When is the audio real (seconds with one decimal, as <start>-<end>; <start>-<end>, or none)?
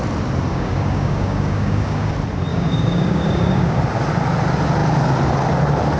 0.0-0.5; 2.1-2.5; 3.8-6.0